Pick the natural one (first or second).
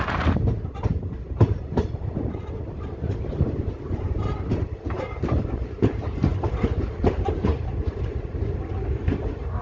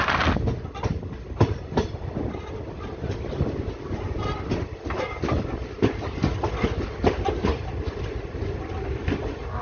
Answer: second